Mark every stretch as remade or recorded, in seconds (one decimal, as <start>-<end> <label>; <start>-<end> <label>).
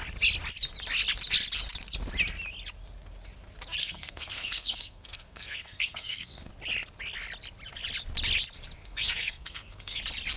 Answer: 0.0-3.8 recorded; 3.8-6.5 remade; 6.5-8.8 recorded; 8.8-10.0 remade; 10.0-10.4 recorded